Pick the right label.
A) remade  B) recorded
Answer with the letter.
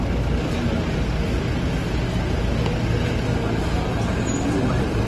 B